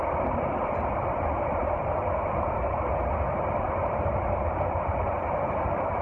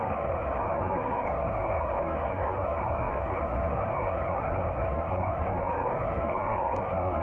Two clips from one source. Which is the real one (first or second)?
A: first